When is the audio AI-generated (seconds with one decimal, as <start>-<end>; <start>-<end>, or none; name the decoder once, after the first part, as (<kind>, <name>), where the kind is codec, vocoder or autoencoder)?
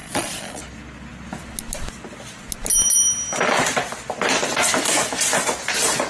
0.0-0.6 (vocoder, Vocos)